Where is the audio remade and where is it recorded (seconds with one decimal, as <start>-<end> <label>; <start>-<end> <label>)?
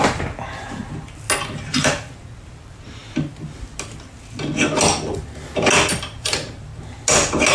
0.0-0.8 remade; 0.8-1.8 recorded; 1.8-3.0 remade; 3.0-6.2 recorded; 6.2-6.7 remade; 6.7-7.5 recorded